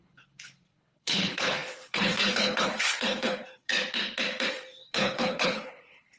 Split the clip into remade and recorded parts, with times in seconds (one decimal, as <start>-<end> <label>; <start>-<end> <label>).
0.0-3.7 remade; 3.7-4.5 recorded; 4.5-6.2 remade